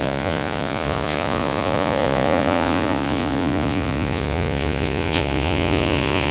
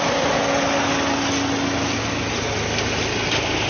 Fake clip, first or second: first